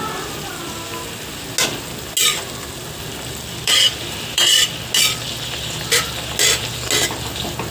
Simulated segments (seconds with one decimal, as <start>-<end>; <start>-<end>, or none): 3.1-4.8